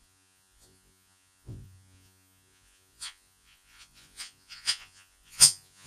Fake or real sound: fake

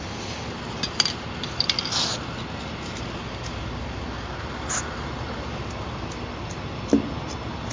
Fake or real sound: real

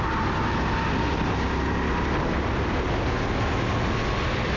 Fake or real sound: real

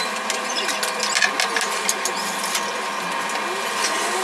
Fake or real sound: real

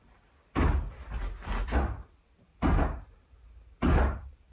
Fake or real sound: real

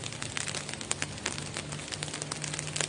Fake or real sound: real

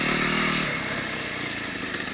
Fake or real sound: real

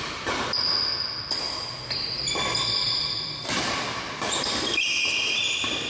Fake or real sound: real